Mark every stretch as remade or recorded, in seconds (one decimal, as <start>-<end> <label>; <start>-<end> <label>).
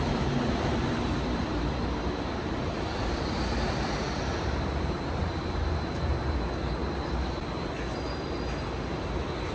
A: 0.0-6.8 remade; 6.8-9.5 recorded